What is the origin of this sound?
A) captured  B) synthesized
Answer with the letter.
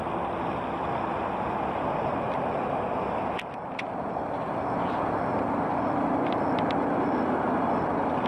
A